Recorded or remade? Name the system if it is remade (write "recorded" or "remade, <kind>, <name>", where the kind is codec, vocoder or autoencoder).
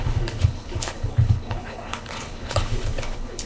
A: remade, codec, HILCodec